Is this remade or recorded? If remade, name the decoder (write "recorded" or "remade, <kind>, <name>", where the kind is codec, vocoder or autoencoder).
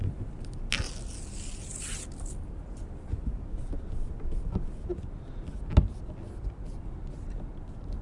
recorded